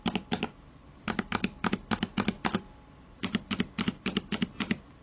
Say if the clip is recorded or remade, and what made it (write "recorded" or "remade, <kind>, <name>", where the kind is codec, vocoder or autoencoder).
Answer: recorded